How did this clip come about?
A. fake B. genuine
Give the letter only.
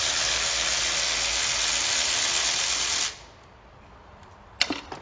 B